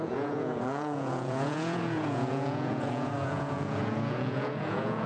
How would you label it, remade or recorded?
remade